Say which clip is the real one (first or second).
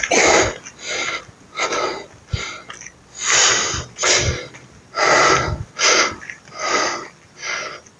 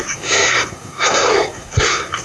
first